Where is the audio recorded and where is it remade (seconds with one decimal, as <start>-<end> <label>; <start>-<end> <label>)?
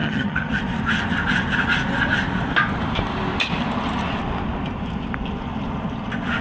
0.0-0.6 remade; 0.6-6.4 recorded